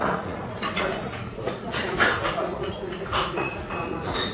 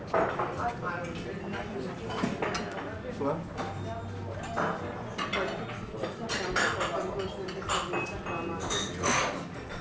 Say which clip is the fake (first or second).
first